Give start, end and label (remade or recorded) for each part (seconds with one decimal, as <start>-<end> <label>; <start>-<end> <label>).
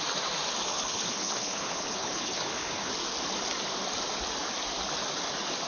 0.0-0.7 recorded; 0.7-2.9 remade; 2.9-5.7 recorded